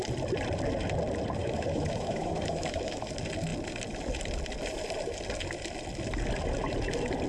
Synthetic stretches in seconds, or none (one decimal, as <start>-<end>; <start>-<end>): 1.4-3.1